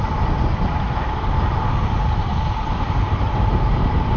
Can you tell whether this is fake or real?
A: real